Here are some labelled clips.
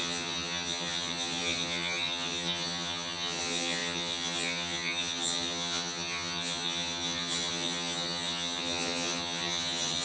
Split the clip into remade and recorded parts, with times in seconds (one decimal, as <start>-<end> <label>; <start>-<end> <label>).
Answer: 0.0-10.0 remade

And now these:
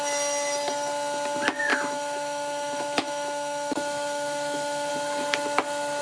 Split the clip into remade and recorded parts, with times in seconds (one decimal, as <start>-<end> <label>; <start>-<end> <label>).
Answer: 0.0-1.7 recorded; 1.7-4.9 remade; 4.9-6.0 recorded

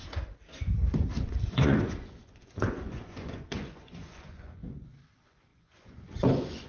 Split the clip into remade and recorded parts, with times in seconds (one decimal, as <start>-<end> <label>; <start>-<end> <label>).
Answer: 0.0-1.2 recorded; 1.2-6.7 remade

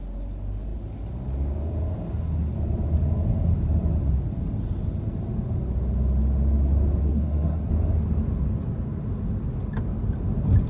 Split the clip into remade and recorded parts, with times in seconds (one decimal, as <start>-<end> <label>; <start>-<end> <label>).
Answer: 0.0-7.0 recorded; 7.0-7.7 remade; 7.7-10.7 recorded

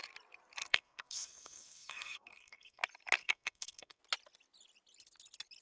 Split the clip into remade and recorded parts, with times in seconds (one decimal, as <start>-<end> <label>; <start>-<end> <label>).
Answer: 0.0-0.6 recorded; 0.6-2.8 remade; 2.8-3.2 recorded; 3.2-4.0 remade; 4.0-5.6 recorded